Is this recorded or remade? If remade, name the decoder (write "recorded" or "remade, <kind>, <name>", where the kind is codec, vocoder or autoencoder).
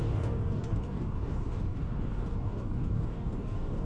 remade, codec, DAC